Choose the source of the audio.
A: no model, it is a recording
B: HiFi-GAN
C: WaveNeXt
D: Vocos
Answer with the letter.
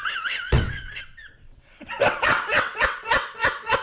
C